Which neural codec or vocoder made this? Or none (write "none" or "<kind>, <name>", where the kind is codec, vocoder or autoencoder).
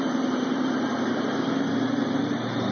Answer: vocoder, BigVGAN v2